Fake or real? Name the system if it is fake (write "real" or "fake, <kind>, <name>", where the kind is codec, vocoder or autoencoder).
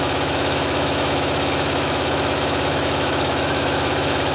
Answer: fake, autoencoder, DAC-VAE